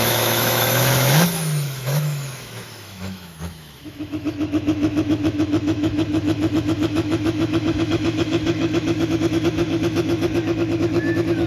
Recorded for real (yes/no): no